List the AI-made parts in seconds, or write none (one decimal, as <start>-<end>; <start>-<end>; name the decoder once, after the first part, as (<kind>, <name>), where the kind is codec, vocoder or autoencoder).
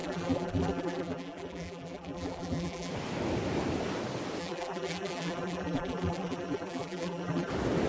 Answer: 0.0-2.9 (vocoder, BigVGAN v2); 4.4-7.5